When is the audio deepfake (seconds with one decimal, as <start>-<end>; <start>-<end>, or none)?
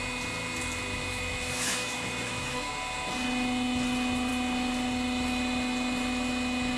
1.0-2.7